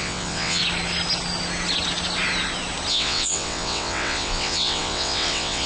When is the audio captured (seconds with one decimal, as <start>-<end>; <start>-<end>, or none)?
0.6-2.9